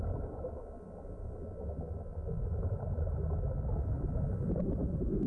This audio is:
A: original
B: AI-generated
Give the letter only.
A